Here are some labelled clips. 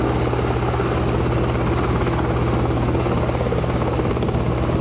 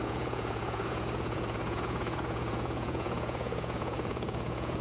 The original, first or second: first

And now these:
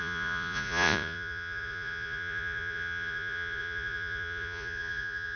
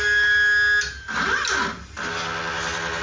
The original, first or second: second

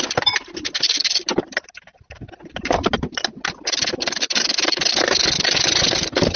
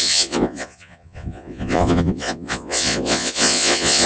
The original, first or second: first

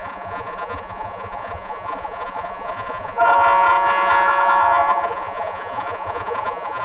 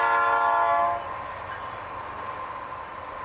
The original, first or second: second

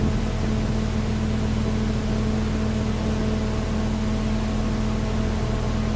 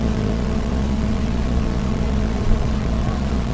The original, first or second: first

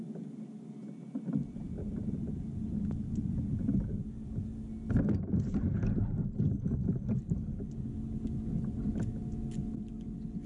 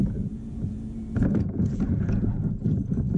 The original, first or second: first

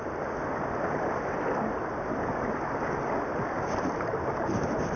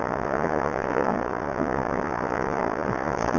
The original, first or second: first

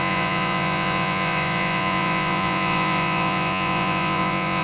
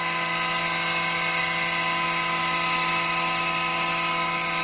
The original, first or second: second